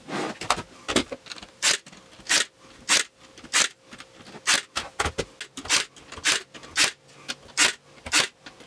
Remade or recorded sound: recorded